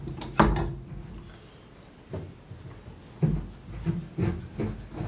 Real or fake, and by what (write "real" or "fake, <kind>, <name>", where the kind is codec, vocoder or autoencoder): real